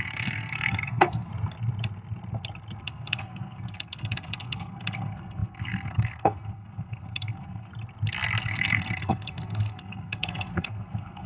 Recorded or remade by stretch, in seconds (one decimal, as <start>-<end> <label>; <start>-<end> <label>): 0.0-1.3 remade; 1.3-2.8 recorded; 2.8-7.7 remade; 7.7-8.4 recorded; 8.4-11.3 remade